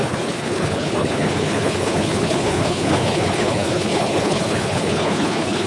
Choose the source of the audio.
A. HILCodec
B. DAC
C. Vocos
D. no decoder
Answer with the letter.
A